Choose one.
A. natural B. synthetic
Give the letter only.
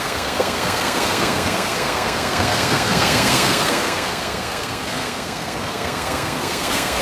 B